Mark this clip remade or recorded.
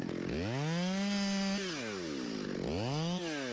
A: recorded